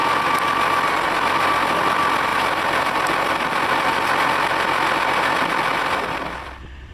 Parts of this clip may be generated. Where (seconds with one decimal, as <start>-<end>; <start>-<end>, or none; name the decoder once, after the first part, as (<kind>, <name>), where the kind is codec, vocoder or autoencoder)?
1.7-6.9 (vocoder, BigVGAN v2)